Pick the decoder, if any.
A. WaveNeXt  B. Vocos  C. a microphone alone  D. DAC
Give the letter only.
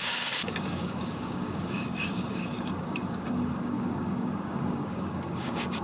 D